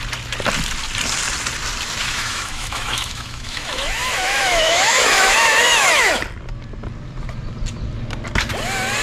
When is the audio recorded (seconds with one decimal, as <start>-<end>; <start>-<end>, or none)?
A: 0.0-2.0; 6.2-9.0